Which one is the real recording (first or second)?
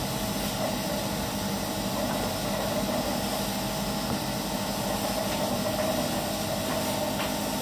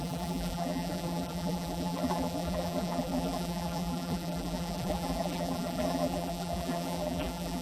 first